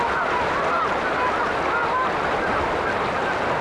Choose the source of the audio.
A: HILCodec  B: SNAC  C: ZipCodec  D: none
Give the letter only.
D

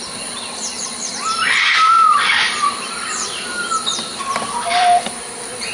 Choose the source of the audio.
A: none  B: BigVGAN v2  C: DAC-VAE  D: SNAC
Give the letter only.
A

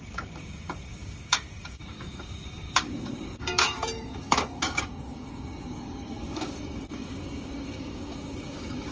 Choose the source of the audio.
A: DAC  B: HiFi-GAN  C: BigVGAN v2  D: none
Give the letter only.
A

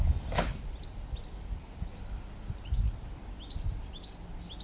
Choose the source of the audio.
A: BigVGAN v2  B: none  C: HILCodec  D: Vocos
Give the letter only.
B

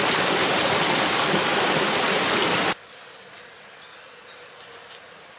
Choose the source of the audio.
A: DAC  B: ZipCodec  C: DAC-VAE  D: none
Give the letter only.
D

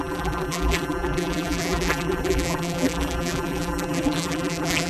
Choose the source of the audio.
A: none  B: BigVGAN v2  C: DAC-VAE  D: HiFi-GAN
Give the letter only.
B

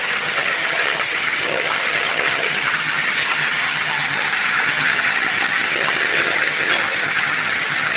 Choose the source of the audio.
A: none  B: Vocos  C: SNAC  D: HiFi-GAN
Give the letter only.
D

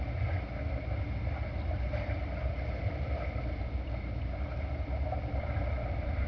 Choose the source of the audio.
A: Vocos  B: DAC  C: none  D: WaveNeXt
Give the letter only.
C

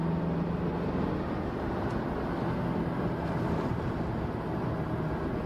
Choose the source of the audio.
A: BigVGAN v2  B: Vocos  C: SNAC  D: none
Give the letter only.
D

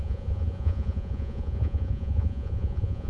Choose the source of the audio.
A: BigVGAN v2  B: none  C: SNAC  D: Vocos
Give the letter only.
D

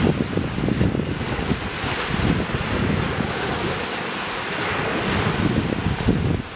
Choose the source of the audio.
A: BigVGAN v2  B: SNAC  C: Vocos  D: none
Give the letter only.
D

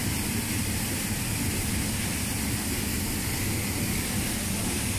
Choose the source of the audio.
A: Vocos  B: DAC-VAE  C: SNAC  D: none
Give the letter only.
D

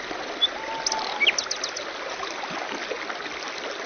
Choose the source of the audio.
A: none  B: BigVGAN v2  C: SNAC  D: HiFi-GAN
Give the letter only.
A